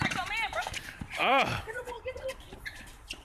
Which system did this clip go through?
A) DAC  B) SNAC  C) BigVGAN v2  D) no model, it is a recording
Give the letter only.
C